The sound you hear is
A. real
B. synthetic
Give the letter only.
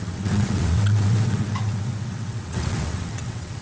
B